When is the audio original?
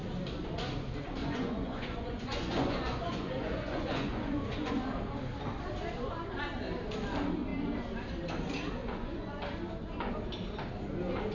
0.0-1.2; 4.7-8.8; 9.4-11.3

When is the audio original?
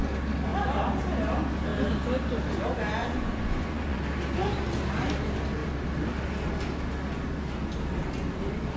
0.0-3.0; 4.0-8.8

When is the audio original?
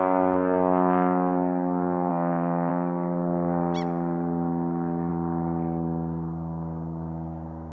0.0-2.1; 2.7-7.7